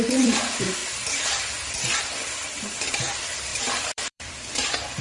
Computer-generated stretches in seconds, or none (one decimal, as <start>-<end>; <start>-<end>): 0.0-0.8; 2.0-5.0